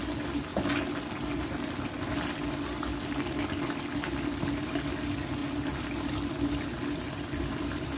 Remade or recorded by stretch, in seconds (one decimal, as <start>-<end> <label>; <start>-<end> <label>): 0.0-5.4 recorded; 5.4-8.0 remade